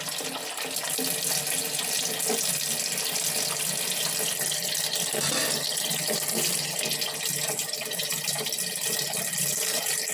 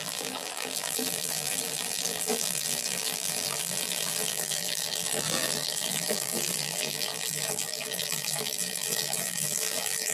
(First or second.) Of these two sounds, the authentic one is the first